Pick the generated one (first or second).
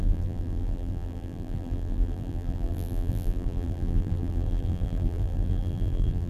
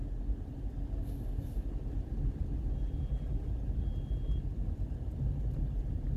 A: first